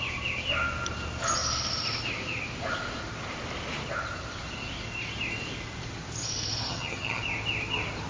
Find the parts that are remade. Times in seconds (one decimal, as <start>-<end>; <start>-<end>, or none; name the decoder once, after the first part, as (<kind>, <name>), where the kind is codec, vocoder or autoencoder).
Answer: 6.7-7.2 (vocoder, HiFi-GAN)